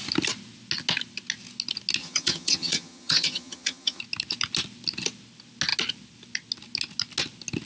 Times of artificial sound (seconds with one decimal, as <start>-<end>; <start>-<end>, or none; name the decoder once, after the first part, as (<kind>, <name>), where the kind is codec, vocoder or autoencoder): 2.0-4.0 (vocoder, HiFi-GAN)